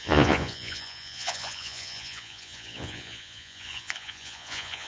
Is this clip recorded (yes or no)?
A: no